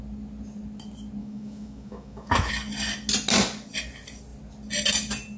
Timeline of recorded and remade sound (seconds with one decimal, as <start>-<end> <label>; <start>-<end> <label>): 0.0-1.2 recorded; 1.2-2.5 remade; 2.5-5.4 recorded